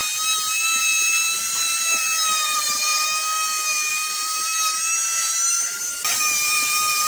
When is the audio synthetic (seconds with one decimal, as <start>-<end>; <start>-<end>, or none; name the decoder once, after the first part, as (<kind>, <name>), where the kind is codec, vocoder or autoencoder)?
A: 0.8-2.9 (vocoder, BigVGAN v2); 3.9-4.5; 5.5-7.1